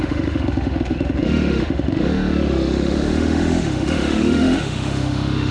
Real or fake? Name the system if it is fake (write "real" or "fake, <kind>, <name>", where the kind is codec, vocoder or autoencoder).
fake, autoencoder, DAC-VAE